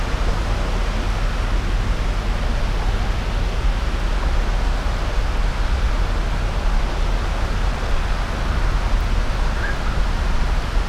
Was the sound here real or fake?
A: real